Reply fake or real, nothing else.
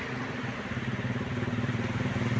real